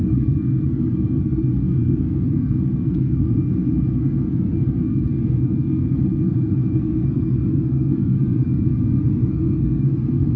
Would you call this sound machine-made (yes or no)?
yes